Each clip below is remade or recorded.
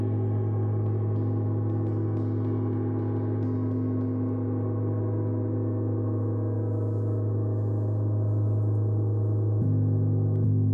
recorded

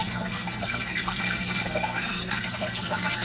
remade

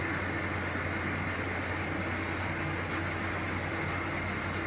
recorded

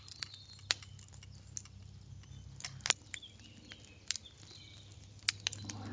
recorded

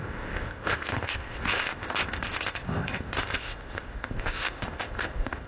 remade